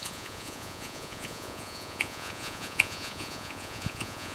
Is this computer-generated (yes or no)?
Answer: yes